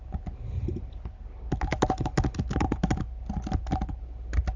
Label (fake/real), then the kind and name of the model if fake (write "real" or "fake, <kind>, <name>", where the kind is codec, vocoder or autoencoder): real